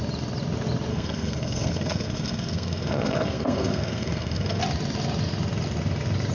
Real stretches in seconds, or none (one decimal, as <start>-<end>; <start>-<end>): 0.0-0.9; 4.6-6.3

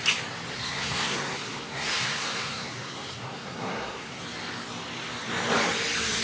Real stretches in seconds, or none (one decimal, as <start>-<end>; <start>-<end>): 0.0-0.5; 4.2-6.2